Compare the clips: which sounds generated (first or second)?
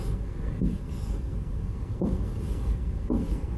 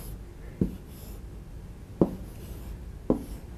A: first